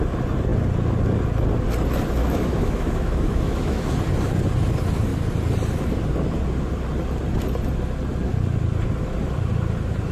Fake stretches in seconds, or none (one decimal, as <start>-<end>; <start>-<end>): 2.2-3.9

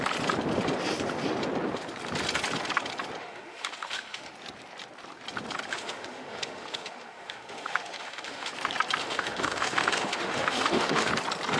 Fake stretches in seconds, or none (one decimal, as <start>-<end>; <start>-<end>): 3.2-4.3; 5.7-8.5; 9.0-11.1

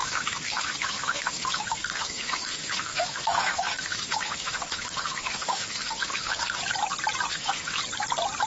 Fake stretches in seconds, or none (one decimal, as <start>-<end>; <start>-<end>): 0.0-6.6; 7.3-7.8

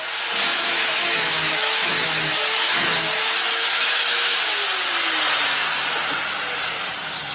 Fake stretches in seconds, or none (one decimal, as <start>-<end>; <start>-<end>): 0.5-4.4

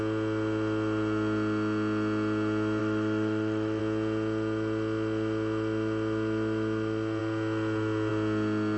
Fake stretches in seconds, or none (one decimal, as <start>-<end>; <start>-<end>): 2.8-3.8